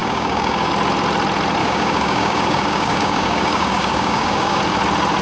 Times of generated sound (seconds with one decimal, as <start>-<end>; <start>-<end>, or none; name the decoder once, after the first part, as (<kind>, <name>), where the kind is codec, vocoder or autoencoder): 0.0-0.7 (codec, DAC); 1.6-4.6